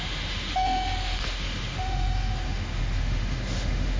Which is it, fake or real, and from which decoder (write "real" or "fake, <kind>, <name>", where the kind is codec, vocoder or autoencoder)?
fake, autoencoder, DAC-VAE